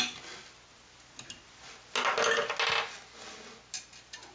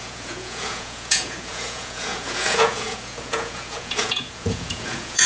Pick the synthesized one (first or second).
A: second